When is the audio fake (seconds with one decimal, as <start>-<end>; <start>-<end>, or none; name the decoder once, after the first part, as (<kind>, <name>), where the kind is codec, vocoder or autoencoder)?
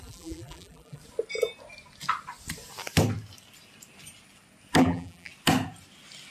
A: 0.0-1.0 (vocoder, BigVGAN v2); 4.8-5.3